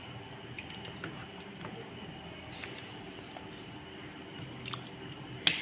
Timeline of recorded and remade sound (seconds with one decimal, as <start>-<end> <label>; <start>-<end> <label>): 0.0-5.6 recorded